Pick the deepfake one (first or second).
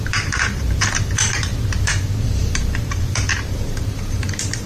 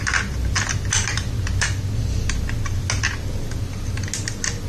first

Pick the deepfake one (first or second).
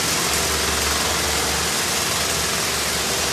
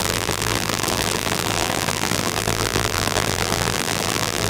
second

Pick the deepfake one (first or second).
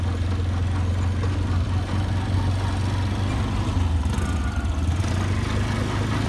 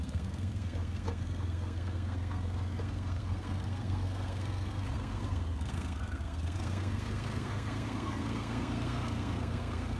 second